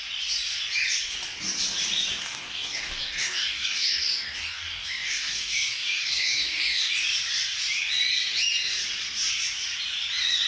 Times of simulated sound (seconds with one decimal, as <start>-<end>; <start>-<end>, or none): 2.2-6.9